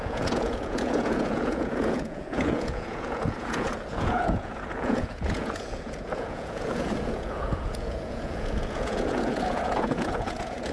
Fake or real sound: fake